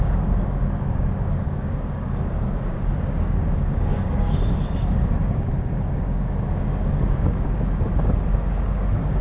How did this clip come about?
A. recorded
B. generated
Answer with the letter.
B